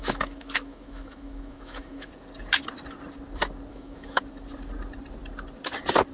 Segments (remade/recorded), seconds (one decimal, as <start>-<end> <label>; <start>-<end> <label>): 0.0-2.1 remade; 2.1-3.7 recorded; 3.7-4.2 remade; 4.2-6.1 recorded

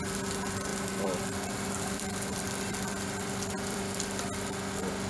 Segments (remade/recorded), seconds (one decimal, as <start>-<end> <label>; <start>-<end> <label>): 0.0-0.7 recorded; 0.7-3.8 remade; 3.8-5.1 recorded

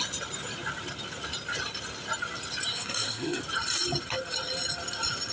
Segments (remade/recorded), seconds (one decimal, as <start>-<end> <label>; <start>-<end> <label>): 0.0-2.7 recorded; 2.7-3.4 remade; 3.4-5.3 recorded

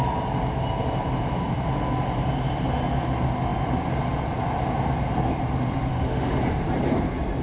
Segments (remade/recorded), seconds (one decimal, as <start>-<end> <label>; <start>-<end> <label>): 0.0-5.9 recorded; 5.9-6.4 remade; 6.4-7.4 recorded

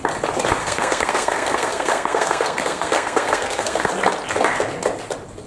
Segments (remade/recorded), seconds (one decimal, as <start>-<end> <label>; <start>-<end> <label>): 0.0-0.6 recorded; 0.6-3.9 remade; 3.9-5.5 recorded

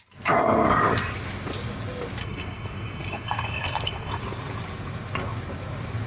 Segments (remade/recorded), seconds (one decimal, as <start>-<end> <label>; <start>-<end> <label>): 0.0-2.2 recorded; 2.2-4.2 remade; 4.2-6.1 recorded

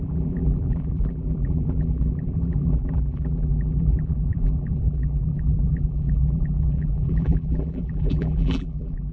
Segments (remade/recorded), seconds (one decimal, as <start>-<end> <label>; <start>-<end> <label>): 0.0-9.1 remade